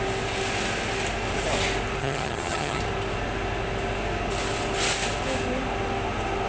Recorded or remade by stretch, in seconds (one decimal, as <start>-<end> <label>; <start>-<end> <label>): 0.0-2.0 recorded; 2.0-2.8 remade; 2.8-6.5 recorded